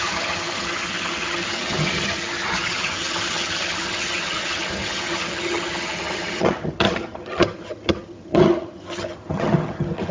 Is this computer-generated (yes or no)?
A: yes